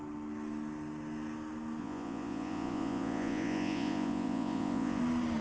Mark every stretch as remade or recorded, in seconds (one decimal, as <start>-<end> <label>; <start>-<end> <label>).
0.0-1.8 recorded; 1.8-5.0 remade; 5.0-5.4 recorded